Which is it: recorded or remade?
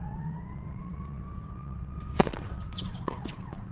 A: remade